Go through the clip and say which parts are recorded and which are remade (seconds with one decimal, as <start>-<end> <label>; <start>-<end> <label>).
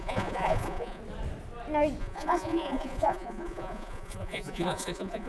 0.0-1.0 remade; 1.0-2.0 recorded; 2.0-5.3 remade